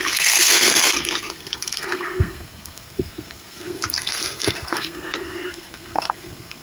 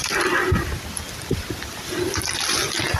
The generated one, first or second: first